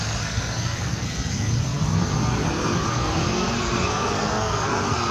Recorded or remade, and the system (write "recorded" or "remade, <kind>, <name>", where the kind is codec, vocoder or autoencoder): remade, codec, SNAC